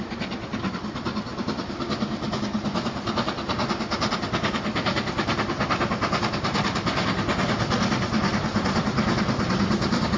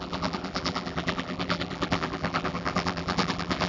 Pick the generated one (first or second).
second